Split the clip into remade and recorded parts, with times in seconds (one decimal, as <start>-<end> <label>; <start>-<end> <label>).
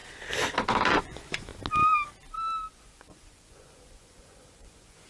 0.0-1.0 recorded; 1.0-1.5 remade; 1.5-2.7 recorded; 2.7-5.1 remade